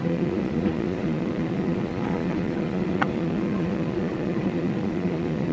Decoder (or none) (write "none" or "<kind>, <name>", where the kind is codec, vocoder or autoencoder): vocoder, Vocos